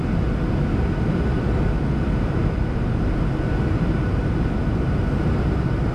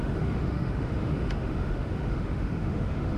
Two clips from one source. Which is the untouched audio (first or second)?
first